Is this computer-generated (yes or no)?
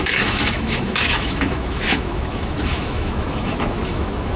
yes